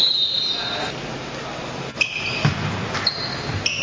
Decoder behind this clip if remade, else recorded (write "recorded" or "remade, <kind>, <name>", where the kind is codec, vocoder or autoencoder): recorded